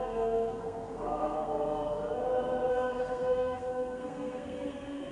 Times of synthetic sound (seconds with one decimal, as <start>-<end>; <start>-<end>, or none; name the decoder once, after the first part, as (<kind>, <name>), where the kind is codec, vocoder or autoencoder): 0.0-2.2 (codec, SNAC); 2.7-5.1

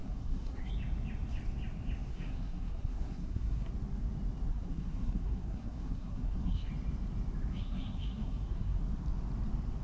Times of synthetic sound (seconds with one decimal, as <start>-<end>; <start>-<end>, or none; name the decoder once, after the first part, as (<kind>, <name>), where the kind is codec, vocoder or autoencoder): 0.0-0.7 (codec, SNAC); 2.1-3.7; 4.5-6.7; 7.5-8.8

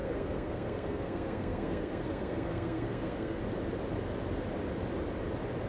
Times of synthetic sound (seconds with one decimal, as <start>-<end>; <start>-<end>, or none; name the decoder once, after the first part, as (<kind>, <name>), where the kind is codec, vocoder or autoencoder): 0.0-3.4 (codec, SNAC)

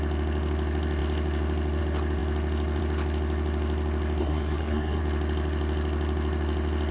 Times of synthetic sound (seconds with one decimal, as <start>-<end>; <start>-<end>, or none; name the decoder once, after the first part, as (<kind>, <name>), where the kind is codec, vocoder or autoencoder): 4.2-5.0 (codec, SNAC)

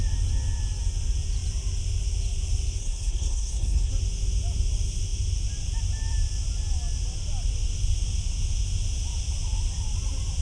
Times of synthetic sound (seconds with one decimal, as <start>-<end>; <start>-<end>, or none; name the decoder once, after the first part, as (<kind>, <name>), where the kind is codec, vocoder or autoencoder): 2.8-3.9 (codec, SNAC)

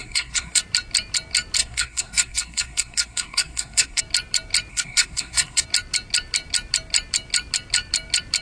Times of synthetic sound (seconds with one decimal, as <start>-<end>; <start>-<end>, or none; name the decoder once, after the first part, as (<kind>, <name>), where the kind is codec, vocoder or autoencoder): 0.0-0.6 (codec, SNAC); 1.6-4.0; 4.7-5.6

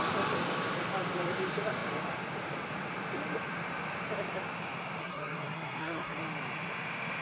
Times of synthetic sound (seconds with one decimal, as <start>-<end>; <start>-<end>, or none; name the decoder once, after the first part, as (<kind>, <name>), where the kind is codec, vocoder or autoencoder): 5.0-6.2 (codec, SNAC)